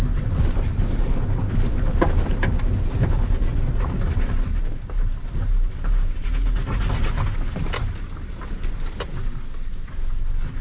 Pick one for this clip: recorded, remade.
recorded